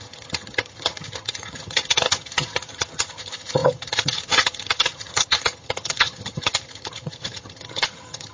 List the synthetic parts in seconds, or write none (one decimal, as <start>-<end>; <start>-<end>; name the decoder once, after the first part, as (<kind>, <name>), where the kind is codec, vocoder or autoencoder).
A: 0.0-8.3 (vocoder, HiFi-GAN)